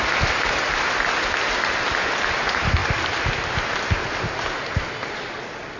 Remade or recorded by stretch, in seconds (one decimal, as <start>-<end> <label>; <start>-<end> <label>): 0.0-5.8 recorded